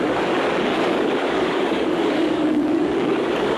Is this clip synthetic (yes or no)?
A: yes